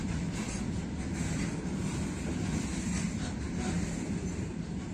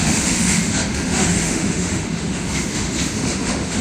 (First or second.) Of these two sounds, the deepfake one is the second